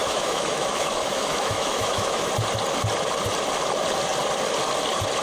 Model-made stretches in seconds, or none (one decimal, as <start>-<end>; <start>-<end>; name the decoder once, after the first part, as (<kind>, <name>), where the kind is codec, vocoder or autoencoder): 0.0-2.3 (autoencoder, DAC-VAE)